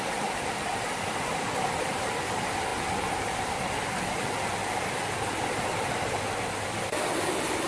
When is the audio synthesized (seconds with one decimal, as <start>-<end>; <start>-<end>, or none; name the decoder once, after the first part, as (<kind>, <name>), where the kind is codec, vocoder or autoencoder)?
none